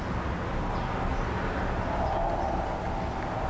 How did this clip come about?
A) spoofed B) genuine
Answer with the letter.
B